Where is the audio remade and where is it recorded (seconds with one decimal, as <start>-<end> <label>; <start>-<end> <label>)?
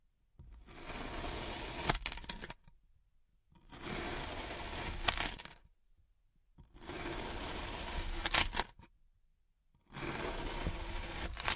0.0-11.6 recorded